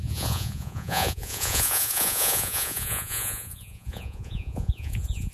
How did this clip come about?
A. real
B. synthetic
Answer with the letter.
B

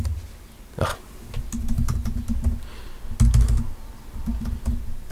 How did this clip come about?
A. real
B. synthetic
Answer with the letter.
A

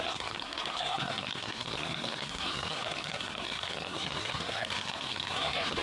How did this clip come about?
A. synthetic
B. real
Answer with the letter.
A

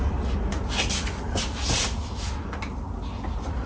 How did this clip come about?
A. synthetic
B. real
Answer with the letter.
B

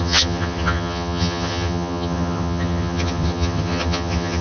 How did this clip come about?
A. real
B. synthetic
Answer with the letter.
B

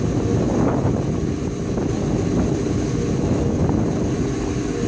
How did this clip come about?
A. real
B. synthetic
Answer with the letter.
A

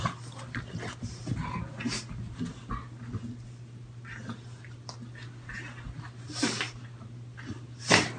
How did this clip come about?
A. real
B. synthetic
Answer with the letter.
A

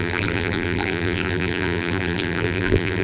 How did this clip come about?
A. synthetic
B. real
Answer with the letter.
A